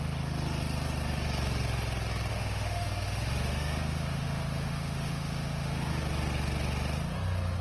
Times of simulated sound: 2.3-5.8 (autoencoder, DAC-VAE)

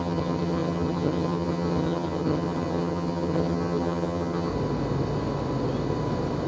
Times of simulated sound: 0.0-4.5 (vocoder, HiFi-GAN)